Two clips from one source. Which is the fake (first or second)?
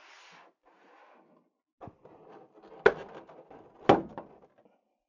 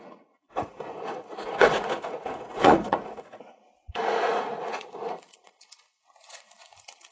second